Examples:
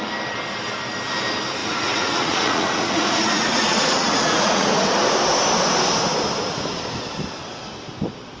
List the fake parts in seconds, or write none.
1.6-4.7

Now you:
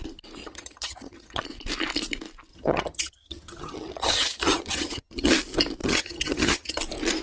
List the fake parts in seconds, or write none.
0.4-1.4; 2.5-5.3; 5.8-6.8

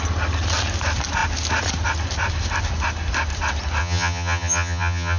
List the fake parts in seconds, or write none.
3.8-5.2

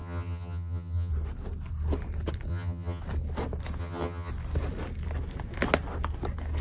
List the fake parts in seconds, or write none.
0.0-1.1; 2.5-3.0; 3.8-4.3

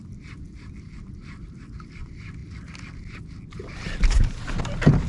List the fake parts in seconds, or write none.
none

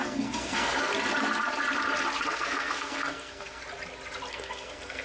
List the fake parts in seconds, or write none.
0.0-0.9; 2.2-3.6; 4.3-5.0